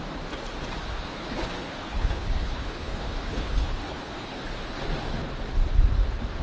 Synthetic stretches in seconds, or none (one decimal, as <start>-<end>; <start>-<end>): 0.9-4.7